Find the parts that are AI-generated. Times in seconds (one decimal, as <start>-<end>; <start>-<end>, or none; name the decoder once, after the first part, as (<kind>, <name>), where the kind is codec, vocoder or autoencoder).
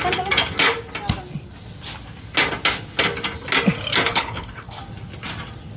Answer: 4.1-4.8 (codec, HILCodec)